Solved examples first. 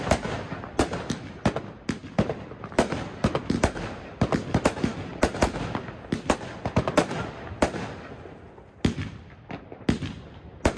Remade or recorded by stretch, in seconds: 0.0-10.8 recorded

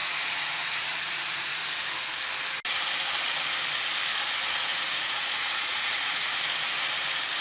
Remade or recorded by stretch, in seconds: 0.0-1.6 remade; 1.6-4.7 recorded; 4.7-6.3 remade; 6.3-7.4 recorded

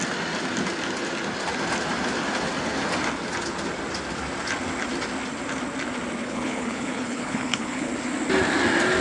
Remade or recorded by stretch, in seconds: 0.0-6.2 recorded; 6.2-7.9 remade; 7.9-9.0 recorded

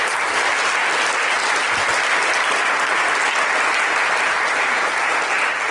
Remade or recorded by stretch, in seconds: 0.0-5.7 recorded

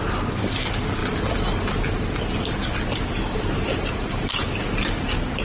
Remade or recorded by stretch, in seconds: 0.0-5.4 recorded

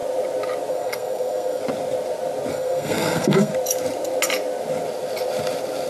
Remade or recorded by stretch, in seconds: 0.0-0.7 recorded; 0.7-1.6 remade; 1.6-2.5 recorded; 2.5-3.5 remade; 3.5-5.9 recorded

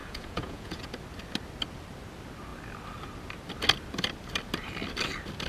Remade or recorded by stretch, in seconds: 0.0-0.8 remade; 0.8-5.5 recorded

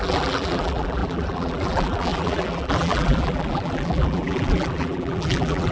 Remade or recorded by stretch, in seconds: 0.0-5.7 remade